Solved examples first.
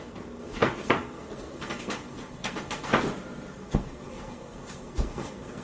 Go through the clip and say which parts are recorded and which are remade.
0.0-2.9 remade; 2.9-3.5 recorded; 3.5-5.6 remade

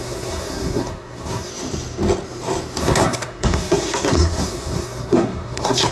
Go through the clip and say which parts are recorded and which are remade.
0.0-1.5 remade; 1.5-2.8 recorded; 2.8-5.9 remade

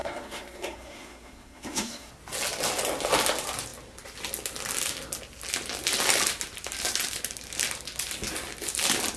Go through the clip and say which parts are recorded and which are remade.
0.0-2.1 remade; 2.1-9.2 recorded